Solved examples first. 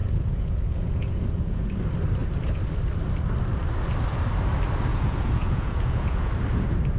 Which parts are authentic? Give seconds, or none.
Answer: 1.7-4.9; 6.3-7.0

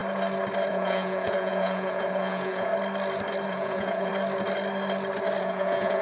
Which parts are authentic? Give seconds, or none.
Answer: 0.0-0.7; 2.7-3.5; 4.1-5.4

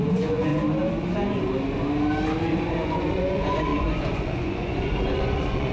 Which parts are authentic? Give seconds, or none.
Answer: 0.5-2.4

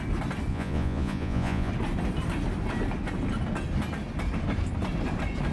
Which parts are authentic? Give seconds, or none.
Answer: 0.0-0.5; 1.7-5.5

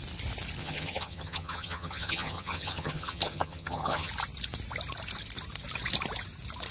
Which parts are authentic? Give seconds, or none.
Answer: 0.0-0.6; 4.1-6.7